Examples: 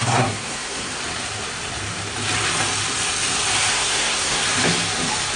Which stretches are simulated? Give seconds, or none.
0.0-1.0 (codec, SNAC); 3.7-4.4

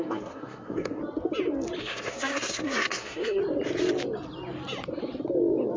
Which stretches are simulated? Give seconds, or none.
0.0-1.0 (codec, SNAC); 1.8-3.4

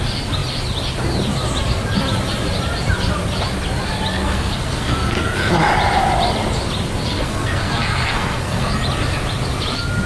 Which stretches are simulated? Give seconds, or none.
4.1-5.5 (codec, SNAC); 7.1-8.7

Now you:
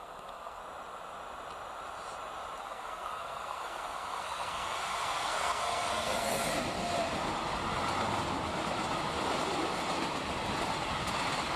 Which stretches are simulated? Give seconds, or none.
0.0-0.6 (codec, SNAC); 2.6-6.5